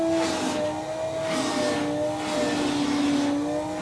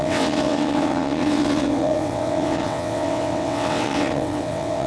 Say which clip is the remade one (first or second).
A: second